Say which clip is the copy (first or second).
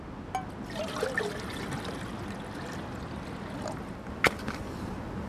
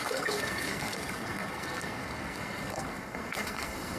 second